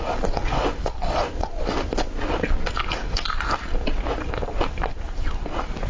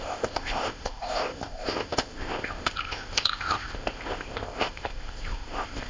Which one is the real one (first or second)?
first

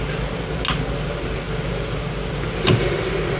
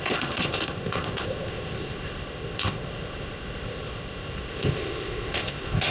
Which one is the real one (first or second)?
first